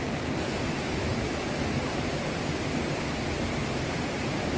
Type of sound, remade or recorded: recorded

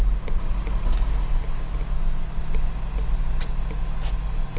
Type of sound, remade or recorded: recorded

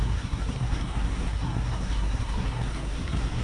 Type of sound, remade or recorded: remade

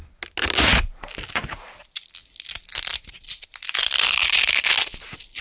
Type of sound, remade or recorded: recorded